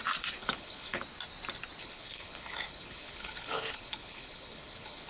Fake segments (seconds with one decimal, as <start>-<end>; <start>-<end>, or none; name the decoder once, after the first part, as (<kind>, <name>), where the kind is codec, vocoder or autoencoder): 0.4-1.0 (codec, HILCodec); 1.8-5.1